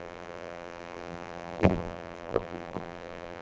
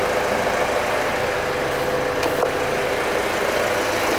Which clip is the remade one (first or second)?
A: first